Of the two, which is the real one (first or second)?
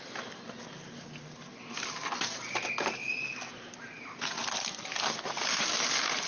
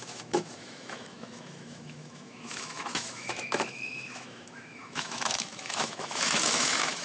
first